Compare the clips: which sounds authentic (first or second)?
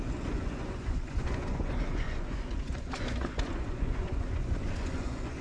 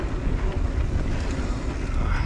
second